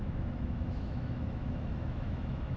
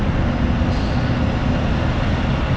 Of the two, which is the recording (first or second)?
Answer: second